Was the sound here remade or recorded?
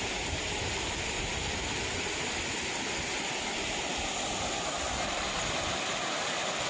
recorded